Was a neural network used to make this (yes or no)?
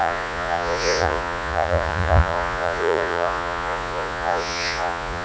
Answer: yes